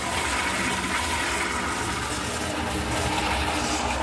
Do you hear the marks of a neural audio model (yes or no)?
no